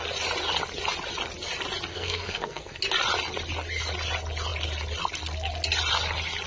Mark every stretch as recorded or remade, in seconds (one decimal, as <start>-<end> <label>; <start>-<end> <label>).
0.0-1.9 recorded; 1.9-2.8 remade; 2.8-6.5 recorded